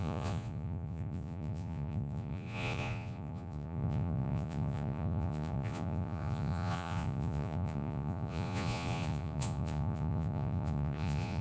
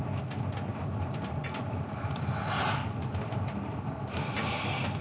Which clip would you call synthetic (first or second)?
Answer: first